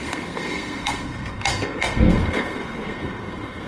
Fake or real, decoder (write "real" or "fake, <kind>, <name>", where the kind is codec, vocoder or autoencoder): fake, codec, SNAC